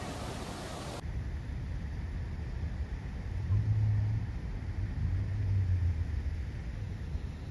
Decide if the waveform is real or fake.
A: real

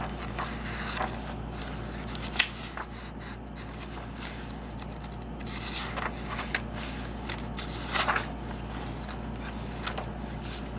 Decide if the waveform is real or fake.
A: real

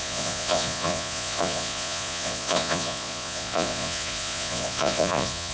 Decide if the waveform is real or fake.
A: fake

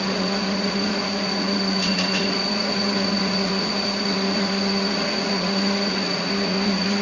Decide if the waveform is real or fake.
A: fake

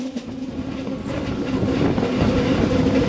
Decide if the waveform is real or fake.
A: real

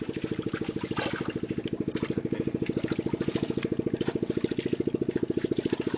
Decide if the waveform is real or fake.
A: fake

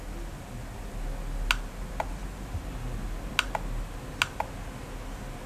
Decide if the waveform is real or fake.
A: real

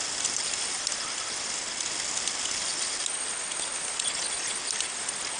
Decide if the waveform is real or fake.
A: real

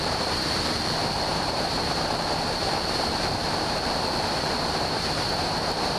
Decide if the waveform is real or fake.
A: fake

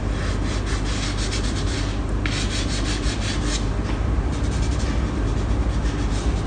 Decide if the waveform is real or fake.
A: real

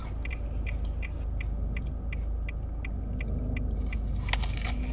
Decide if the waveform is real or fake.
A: real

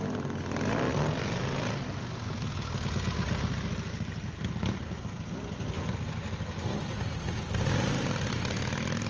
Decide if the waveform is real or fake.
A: real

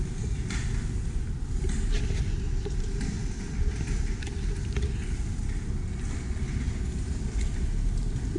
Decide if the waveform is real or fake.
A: real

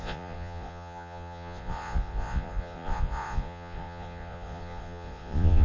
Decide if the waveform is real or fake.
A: fake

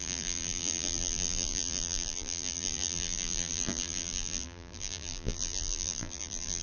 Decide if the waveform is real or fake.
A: fake